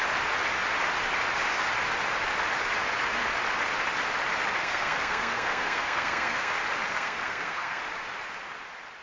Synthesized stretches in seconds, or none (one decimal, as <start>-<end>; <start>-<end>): 4.6-6.5; 6.9-7.8